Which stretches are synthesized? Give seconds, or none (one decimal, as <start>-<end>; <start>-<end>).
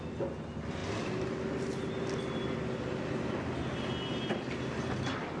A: none